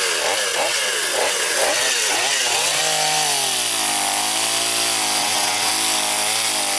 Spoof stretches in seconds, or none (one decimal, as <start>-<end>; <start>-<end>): 0.5-2.8; 5.2-5.7